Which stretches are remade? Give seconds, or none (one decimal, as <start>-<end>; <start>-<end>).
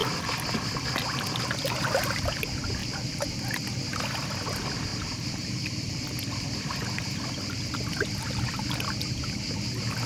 none